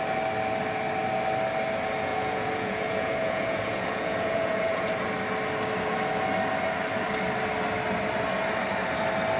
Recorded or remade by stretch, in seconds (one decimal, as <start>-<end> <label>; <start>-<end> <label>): 0.0-2.1 recorded; 2.1-4.9 remade; 4.9-9.4 recorded